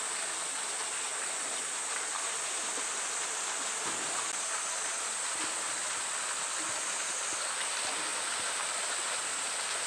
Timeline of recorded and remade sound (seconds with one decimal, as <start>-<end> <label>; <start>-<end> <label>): 0.0-9.9 recorded